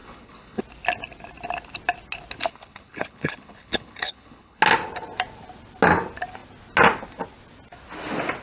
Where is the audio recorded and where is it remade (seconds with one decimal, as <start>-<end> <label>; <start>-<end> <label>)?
0.0-0.6 remade; 0.6-2.5 recorded; 2.5-4.6 remade; 4.6-8.4 recorded